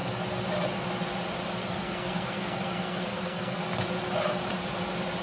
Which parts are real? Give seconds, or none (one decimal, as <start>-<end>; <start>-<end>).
0.0-1.6; 3.6-5.2